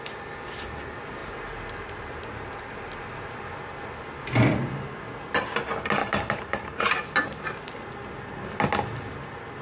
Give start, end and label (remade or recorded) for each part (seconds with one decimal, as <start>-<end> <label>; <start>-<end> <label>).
0.0-6.0 recorded; 6.0-6.8 remade; 6.8-9.6 recorded